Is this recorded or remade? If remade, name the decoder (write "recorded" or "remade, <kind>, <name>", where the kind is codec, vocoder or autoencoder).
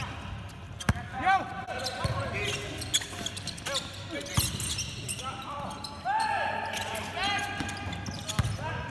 recorded